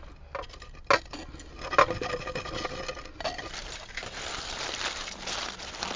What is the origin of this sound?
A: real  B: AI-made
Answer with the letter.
A